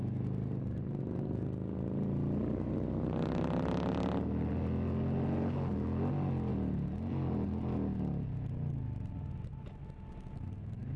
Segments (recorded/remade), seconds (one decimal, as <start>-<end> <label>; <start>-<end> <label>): 0.0-11.0 recorded